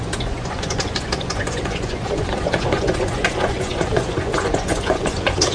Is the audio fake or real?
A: fake